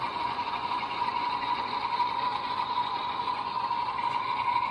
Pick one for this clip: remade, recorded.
remade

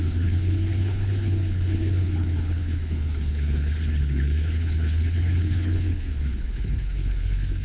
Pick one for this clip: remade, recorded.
remade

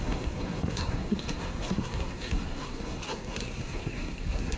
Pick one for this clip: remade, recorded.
remade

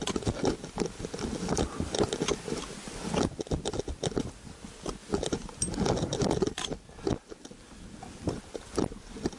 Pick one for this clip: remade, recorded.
recorded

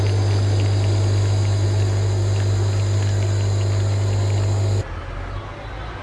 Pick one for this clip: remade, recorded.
recorded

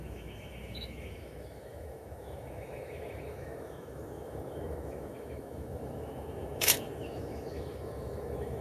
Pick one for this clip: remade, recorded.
remade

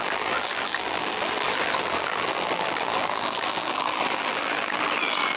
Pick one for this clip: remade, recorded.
remade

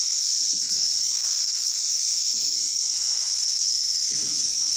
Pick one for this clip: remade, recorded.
remade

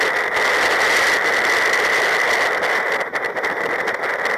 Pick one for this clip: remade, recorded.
recorded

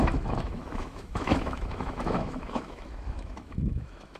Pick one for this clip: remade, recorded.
remade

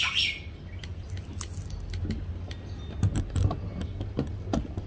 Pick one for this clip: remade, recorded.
recorded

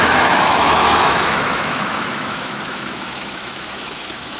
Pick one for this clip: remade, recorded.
remade